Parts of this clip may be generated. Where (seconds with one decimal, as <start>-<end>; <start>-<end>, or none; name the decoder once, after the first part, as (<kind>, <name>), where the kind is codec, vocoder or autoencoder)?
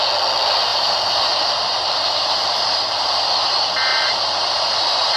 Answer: 0.7-3.3 (vocoder, BigVGAN v2); 3.9-5.2